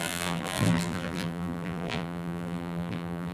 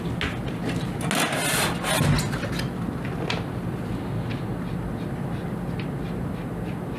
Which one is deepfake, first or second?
first